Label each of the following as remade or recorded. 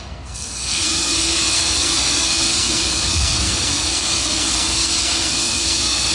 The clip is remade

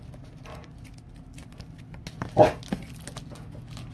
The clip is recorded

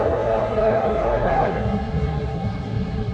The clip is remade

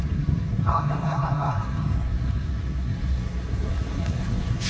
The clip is remade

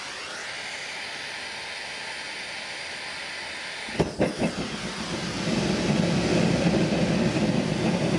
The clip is recorded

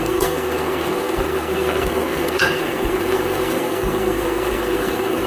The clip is remade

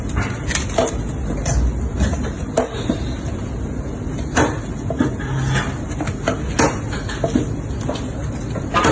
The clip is recorded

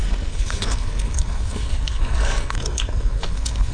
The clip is remade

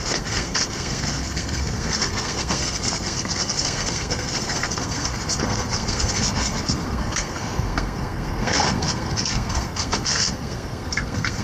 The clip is remade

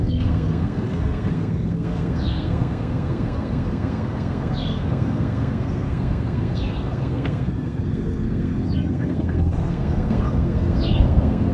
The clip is remade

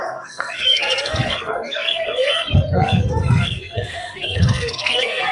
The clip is remade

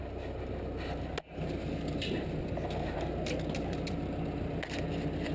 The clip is recorded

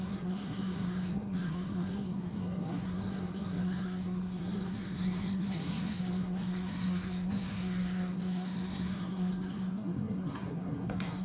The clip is remade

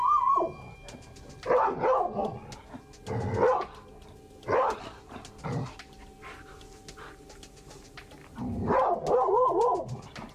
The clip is recorded